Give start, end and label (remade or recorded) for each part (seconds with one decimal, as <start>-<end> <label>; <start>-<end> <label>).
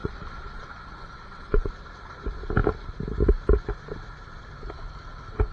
0.0-1.7 remade; 1.7-5.5 recorded